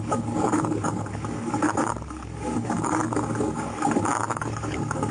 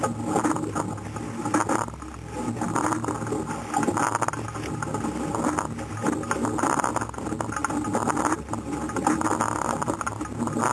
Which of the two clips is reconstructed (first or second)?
first